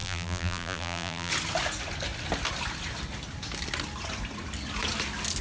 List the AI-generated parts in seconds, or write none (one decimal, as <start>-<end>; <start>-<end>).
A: 0.0-1.3